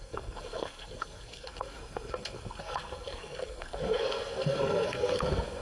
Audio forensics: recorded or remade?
remade